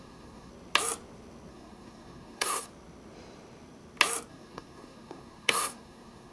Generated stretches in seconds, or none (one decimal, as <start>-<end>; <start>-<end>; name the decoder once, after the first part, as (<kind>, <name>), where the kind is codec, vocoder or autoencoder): 0.0-0.5 (codec, SNAC); 1.5-2.7; 4.3-6.3